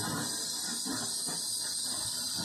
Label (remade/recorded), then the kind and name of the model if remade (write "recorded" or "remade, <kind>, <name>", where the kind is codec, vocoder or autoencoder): recorded